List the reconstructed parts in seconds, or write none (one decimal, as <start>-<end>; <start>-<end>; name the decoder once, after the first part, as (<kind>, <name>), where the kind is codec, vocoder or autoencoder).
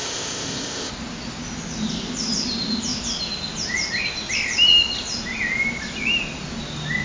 0.0-0.9 (codec, ZipCodec)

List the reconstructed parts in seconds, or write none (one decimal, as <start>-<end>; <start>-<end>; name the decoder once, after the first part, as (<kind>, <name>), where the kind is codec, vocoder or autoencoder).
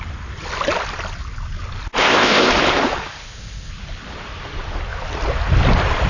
2.0-2.5 (codec, ZipCodec); 3.1-3.7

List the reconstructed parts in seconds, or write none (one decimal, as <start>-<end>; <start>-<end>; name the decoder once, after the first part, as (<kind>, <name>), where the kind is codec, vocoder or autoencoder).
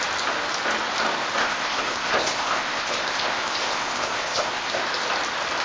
1.4-4.8 (codec, ZipCodec)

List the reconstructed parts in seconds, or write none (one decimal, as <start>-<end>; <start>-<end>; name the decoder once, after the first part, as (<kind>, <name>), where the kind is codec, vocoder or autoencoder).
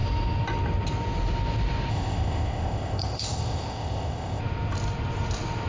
1.9-4.4 (codec, ZipCodec)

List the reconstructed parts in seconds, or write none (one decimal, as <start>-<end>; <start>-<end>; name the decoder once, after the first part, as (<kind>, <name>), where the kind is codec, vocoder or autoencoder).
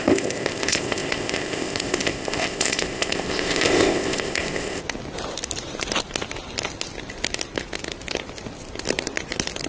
0.0-4.8 (codec, ZipCodec)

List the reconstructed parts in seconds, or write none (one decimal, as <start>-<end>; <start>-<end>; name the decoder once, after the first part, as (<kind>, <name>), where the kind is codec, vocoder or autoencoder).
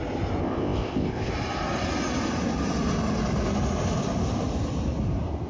0.4-1.3 (codec, ZipCodec)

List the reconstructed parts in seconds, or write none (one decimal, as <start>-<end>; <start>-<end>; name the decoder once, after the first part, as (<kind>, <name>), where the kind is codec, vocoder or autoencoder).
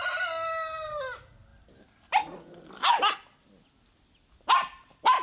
none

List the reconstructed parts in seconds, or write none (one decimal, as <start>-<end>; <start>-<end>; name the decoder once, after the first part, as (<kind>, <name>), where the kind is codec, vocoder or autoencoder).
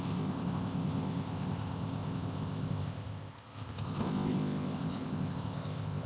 0.0-6.1 (codec, ZipCodec)